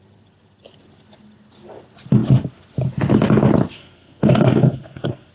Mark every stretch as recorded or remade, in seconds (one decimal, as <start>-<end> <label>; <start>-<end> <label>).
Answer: 0.0-3.8 recorded; 3.8-5.3 remade

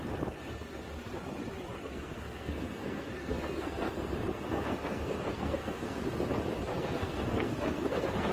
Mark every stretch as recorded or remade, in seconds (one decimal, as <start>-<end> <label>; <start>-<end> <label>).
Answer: 0.0-1.9 recorded; 1.9-6.0 remade; 6.0-6.7 recorded; 6.7-8.3 remade

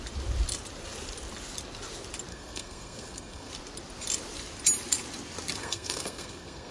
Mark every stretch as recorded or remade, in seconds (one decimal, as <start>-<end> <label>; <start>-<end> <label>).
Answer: 0.0-2.3 recorded; 2.3-3.5 remade; 3.5-5.6 recorded; 5.6-6.7 remade

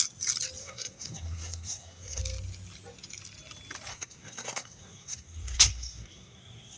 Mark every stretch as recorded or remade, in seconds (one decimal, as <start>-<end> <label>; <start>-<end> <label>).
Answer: 0.0-0.6 recorded; 0.6-2.2 remade; 2.2-3.9 recorded; 3.9-6.8 remade

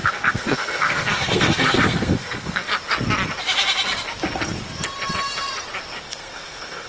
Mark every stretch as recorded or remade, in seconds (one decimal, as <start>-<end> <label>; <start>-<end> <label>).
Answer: 0.0-2.7 remade; 2.7-6.0 recorded; 6.0-6.9 remade